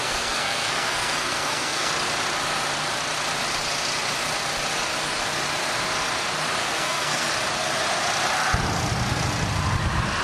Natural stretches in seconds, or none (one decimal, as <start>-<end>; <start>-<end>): 1.9-6.6; 7.3-10.2